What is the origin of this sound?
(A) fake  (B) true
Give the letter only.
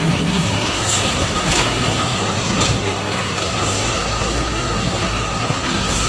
A